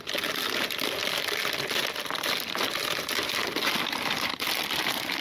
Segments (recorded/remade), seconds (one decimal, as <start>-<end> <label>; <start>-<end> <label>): 0.0-5.2 recorded